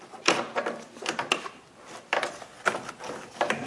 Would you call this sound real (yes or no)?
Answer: yes